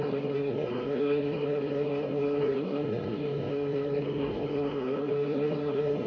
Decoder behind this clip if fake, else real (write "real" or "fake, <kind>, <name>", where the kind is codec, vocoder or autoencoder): fake, codec, SNAC